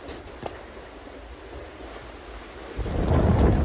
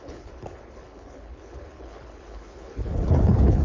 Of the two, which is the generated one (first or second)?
second